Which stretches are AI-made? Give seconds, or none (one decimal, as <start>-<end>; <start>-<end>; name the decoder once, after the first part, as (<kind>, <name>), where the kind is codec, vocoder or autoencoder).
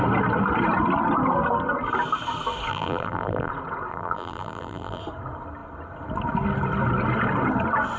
2.7-3.5 (vocoder, BigVGAN v2); 3.9-5.0